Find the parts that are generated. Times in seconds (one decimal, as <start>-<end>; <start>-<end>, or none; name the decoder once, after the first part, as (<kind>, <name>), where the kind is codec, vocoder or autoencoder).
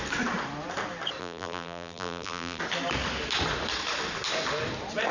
1.2-2.6 (vocoder, BigVGAN v2)